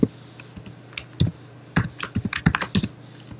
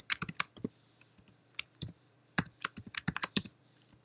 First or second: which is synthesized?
second